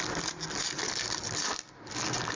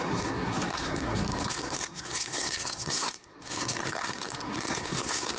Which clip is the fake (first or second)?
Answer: second